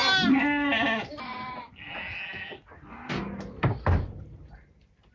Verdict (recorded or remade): recorded